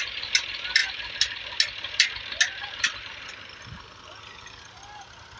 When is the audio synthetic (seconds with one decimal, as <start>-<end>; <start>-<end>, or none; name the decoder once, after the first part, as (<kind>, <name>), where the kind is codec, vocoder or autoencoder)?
none